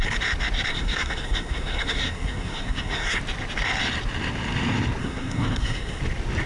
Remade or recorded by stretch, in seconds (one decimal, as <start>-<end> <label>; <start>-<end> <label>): 0.0-0.7 recorded; 0.7-3.2 remade; 3.2-5.0 recorded; 5.0-6.0 remade; 6.0-6.5 recorded

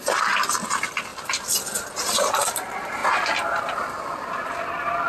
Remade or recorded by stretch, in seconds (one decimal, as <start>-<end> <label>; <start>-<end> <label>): 0.0-5.1 recorded

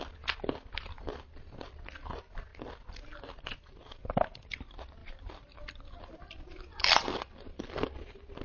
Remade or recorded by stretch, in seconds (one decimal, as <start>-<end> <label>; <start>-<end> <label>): 0.0-3.8 recorded; 3.8-4.4 remade; 4.4-5.0 recorded; 5.0-7.6 remade; 7.6-8.4 recorded